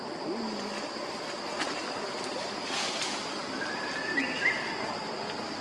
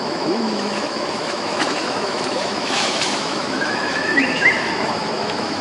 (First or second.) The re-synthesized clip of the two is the second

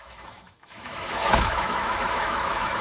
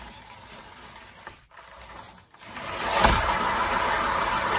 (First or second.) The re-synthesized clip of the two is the first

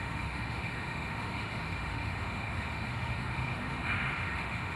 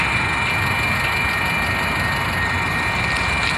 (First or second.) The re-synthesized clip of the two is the first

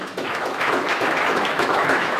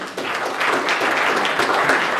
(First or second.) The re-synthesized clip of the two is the first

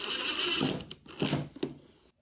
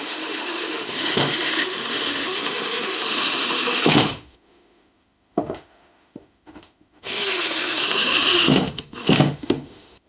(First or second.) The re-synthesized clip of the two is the second